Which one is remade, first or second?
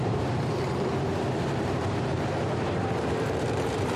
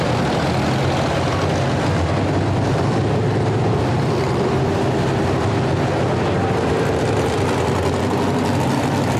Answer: first